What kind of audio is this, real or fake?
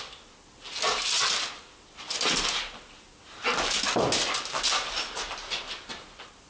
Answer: real